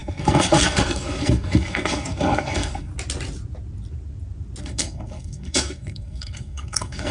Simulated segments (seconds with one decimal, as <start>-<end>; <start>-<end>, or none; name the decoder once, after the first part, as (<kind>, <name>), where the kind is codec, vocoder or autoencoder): 0.0-2.9 (codec, SNAC); 4.6-7.1